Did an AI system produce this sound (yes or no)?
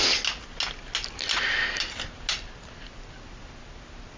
no